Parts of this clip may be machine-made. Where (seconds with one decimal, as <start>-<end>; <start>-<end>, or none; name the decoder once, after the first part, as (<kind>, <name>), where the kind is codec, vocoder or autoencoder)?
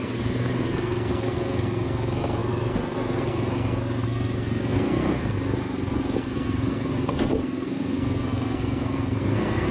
0.0-9.7 (codec, SNAC)